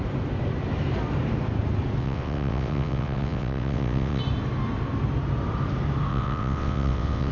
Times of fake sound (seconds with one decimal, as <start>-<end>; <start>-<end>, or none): 2.0-4.2; 6.1-7.3